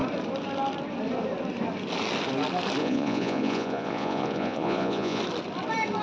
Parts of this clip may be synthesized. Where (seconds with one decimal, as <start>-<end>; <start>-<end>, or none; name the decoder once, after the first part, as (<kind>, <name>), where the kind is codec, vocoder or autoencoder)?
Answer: 2.8-5.2 (vocoder, Vocos)